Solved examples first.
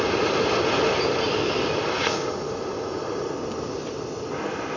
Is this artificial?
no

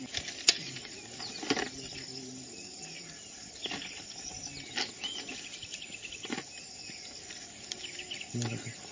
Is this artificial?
no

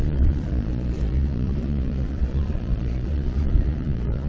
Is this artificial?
yes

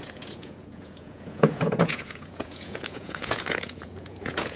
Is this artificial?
yes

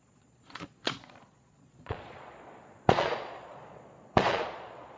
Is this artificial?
yes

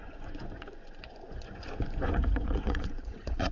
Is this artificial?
yes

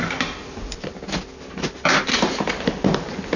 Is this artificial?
no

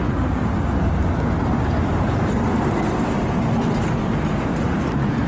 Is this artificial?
no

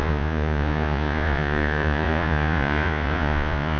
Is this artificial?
yes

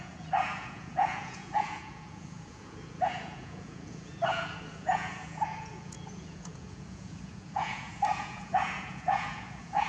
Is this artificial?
yes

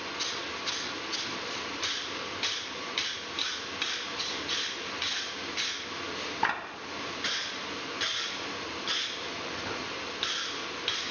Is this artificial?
no